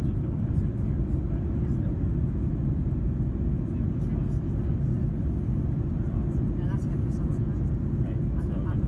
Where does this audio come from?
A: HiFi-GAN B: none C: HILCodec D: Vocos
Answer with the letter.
B